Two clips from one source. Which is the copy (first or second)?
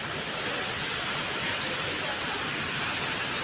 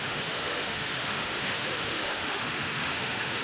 second